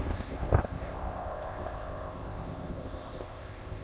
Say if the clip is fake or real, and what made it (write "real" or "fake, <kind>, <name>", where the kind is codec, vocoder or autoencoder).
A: fake, codec, ZipCodec